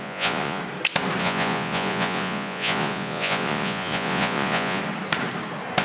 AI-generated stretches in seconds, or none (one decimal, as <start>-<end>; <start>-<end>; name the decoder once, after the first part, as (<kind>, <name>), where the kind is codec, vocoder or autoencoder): 0.0-0.6 (vocoder, Vocos); 1.2-4.8